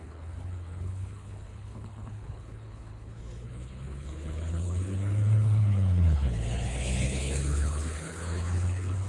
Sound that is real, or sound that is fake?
fake